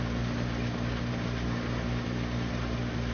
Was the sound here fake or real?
real